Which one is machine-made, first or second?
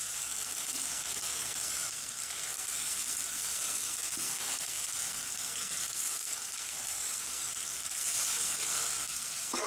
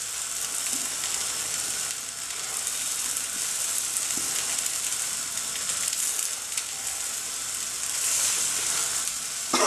first